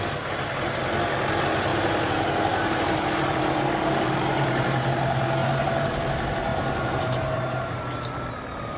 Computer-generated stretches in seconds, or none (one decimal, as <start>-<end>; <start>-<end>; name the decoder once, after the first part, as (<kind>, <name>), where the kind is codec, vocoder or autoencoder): 1.7-3.6 (vocoder, BigVGAN v2); 5.4-6.0; 6.5-7.8